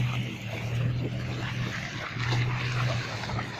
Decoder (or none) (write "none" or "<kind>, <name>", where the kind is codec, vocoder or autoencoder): none